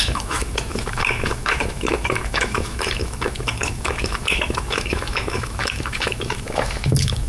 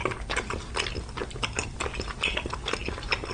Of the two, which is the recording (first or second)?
second